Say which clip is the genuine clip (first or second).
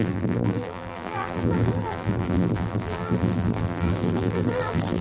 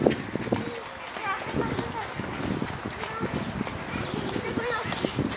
second